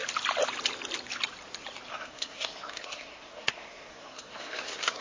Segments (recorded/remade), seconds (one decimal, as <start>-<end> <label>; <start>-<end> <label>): 0.0-1.9 recorded; 1.9-5.0 remade